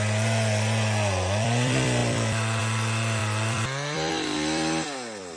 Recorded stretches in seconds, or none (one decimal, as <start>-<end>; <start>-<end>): none